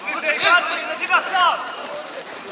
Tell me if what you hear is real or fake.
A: fake